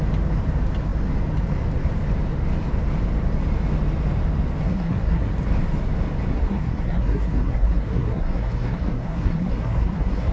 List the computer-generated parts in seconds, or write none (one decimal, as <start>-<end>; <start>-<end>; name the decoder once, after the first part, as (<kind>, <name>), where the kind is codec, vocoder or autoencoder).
4.6-5.3 (codec, SNAC); 6.3-10.3